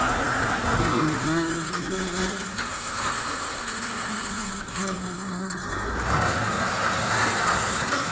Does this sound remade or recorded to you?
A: remade